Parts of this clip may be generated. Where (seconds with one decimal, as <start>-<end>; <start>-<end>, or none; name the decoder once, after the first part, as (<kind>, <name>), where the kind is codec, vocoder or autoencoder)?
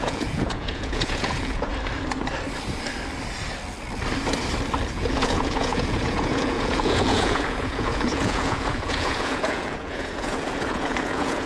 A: 0.0-1.7 (vocoder, Vocos); 4.9-11.5